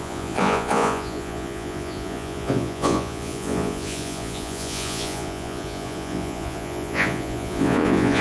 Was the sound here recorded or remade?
remade